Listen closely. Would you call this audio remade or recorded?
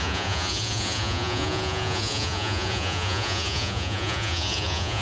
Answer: remade